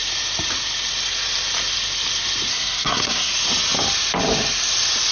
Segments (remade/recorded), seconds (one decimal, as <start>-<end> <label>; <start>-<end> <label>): 0.0-2.5 recorded; 2.5-3.3 remade; 3.3-5.1 recorded